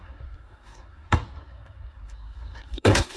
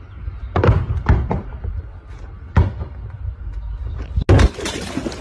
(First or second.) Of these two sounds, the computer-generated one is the first